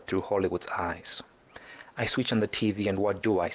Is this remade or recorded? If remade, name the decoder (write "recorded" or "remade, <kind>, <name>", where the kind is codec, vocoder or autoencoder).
remade, vocoder, Vocos